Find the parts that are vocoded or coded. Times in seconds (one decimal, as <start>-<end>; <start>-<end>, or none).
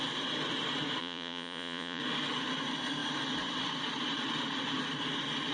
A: 1.0-2.0